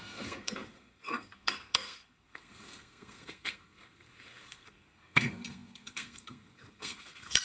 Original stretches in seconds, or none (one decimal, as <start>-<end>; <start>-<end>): none